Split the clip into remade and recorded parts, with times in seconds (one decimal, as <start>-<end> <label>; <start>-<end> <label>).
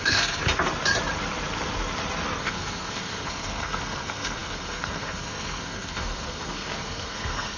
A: 0.0-0.4 remade; 0.4-2.4 recorded; 2.4-7.6 remade